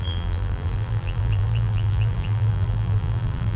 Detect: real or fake fake